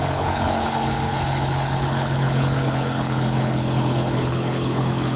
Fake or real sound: fake